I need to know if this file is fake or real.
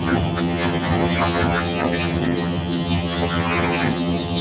fake